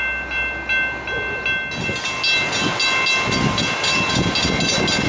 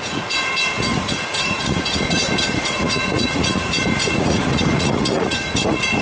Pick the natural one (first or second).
first